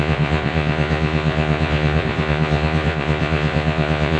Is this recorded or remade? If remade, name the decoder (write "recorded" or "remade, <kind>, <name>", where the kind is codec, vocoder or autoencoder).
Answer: remade, vocoder, Vocos